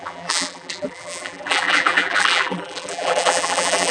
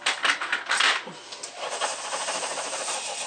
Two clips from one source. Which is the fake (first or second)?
first